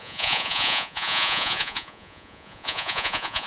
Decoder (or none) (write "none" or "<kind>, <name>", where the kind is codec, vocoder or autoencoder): vocoder, Vocos